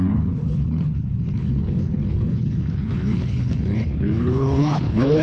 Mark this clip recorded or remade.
remade